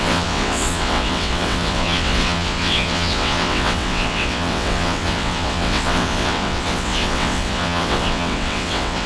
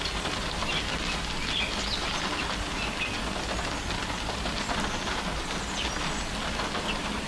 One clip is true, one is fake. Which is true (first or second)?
second